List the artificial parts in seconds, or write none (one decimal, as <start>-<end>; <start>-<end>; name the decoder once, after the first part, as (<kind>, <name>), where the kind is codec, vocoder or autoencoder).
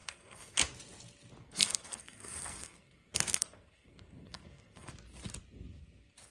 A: 0.0-0.6 (codec, SNAC); 1.4-4.9